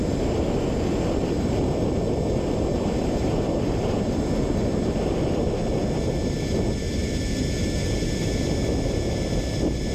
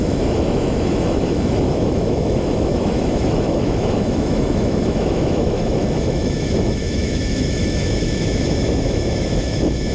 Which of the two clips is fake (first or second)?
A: second